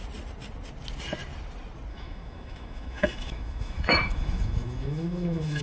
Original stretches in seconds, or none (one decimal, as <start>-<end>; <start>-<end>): 0.0-1.9